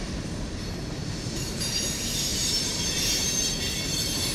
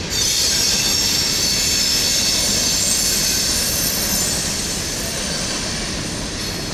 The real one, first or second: second